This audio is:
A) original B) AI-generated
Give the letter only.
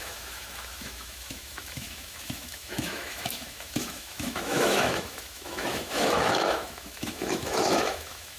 B